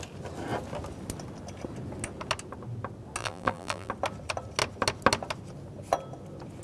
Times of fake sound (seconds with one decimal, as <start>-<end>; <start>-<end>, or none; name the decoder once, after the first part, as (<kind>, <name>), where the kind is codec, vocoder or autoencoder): 3.2-3.9 (vocoder, BigVGAN v2)